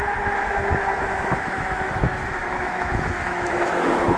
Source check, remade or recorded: remade